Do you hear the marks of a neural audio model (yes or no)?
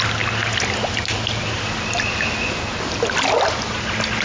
no